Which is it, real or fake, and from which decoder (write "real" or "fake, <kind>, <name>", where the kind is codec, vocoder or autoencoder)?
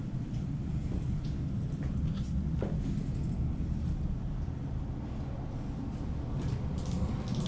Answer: real